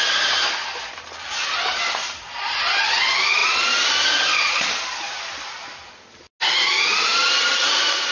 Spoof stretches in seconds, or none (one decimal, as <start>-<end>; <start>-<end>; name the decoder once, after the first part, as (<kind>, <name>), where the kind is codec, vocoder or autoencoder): none